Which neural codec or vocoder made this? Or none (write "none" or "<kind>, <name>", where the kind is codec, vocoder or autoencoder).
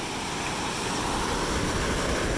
none